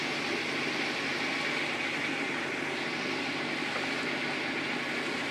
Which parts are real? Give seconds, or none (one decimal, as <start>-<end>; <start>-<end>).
0.0-5.3